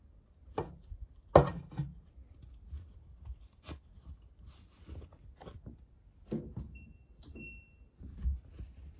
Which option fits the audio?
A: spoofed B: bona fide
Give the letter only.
B